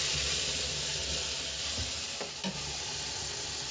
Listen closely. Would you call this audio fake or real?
real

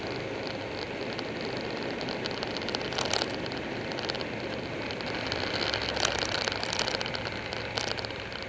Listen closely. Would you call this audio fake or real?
real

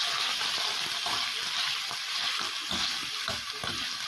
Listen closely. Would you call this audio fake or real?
real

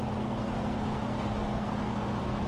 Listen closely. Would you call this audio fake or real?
fake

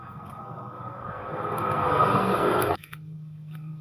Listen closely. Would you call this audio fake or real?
fake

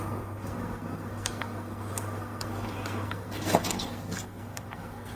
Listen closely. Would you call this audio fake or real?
fake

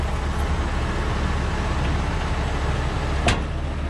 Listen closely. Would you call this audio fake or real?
real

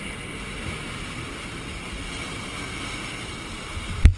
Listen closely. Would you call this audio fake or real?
real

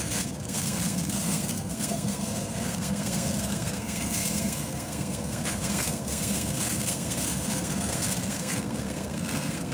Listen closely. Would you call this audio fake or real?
fake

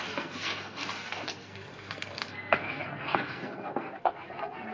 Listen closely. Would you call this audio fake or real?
fake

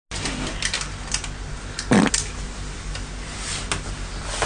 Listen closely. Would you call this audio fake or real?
real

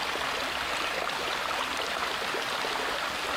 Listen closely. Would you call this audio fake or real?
real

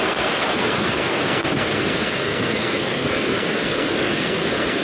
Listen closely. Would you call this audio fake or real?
fake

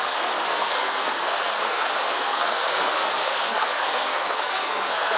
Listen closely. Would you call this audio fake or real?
fake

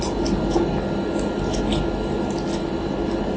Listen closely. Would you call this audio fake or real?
real